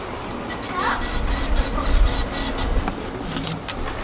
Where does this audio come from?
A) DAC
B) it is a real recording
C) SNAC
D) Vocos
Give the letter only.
B